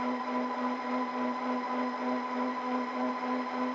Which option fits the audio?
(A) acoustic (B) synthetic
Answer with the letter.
B